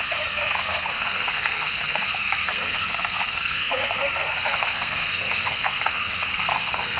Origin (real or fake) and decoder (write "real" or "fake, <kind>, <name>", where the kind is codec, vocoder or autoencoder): fake, codec, SNAC